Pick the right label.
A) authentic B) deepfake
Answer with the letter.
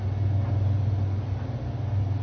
A